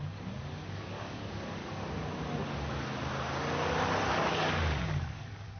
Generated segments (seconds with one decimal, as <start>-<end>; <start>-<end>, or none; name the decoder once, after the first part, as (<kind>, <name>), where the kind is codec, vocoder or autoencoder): 0.0-1.6 (codec, DAC); 4.2-5.6